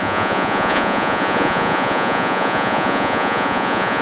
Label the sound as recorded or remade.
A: remade